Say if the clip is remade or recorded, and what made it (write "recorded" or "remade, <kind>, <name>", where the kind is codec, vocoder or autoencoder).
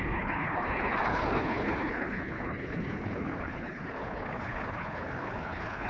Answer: remade, codec, HILCodec